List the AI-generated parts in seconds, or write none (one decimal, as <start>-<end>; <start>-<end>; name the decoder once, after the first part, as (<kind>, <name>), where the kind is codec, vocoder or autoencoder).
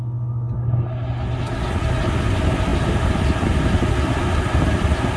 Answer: none